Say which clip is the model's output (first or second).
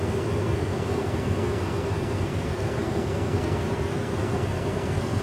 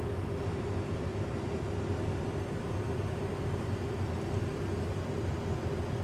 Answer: first